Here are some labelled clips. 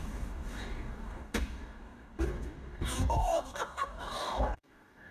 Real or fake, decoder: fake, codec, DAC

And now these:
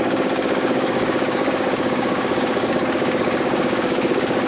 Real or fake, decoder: fake, codec, DAC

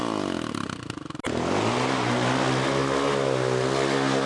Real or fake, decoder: real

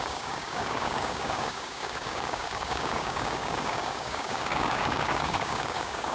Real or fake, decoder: fake, codec, DAC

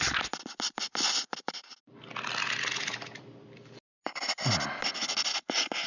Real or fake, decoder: real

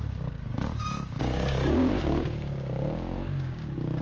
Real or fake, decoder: fake, codec, DAC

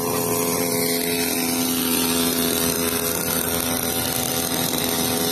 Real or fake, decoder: real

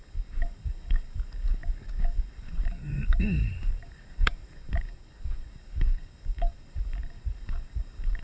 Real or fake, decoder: fake, codec, DAC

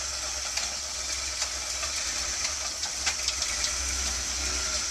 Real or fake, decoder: real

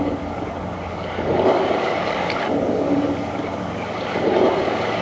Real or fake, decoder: fake, codec, DAC